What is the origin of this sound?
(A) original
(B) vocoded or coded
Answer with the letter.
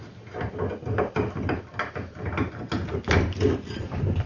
A